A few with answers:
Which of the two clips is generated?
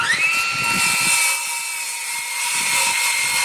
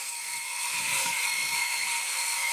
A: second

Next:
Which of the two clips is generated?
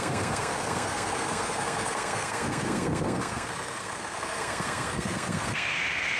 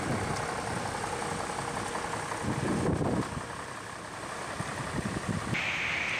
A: first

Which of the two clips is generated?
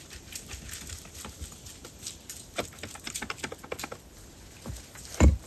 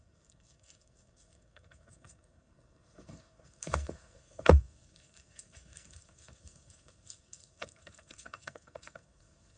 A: second